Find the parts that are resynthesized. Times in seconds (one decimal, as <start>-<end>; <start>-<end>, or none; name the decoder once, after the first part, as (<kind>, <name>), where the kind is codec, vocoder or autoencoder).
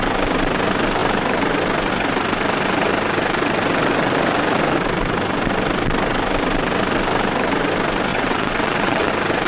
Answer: 8.1-9.1 (vocoder, WaveNeXt)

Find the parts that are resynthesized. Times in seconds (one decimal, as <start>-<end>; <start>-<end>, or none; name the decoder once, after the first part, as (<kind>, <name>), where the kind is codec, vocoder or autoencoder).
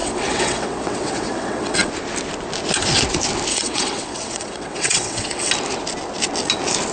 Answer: 0.0-1.9 (vocoder, WaveNeXt); 3.5-5.5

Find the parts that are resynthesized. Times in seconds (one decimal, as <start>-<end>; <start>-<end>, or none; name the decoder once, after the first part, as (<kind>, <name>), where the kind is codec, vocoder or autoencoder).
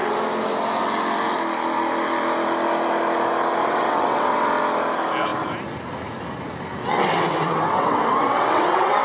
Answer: 3.6-4.5 (vocoder, WaveNeXt); 6.8-9.0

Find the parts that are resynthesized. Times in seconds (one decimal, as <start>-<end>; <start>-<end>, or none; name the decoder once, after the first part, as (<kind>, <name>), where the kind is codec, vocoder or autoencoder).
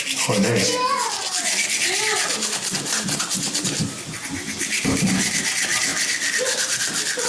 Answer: none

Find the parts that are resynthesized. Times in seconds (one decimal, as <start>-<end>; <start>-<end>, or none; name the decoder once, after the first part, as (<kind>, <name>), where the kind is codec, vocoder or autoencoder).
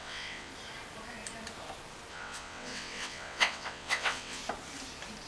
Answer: 0.0-0.5 (vocoder, WaveNeXt); 2.1-4.4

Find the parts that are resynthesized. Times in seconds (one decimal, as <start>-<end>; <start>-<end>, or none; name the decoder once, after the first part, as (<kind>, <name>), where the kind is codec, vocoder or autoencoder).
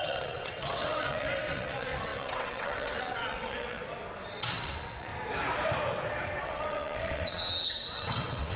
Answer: 0.0-3.8 (vocoder, WaveNeXt); 4.4-5.1; 6.4-8.6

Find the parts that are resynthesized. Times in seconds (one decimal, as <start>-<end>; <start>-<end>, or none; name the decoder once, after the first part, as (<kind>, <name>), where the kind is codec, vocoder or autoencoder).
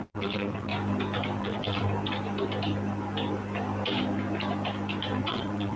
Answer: 0.0-0.7 (vocoder, WaveNeXt); 1.4-1.8; 5.3-5.8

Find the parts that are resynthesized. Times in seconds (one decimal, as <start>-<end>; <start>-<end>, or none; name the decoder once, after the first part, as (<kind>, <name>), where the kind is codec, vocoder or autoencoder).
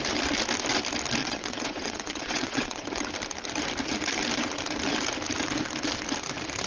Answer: 1.2-3.0 (vocoder, WaveNeXt)